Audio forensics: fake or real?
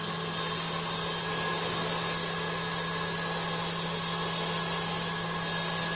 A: real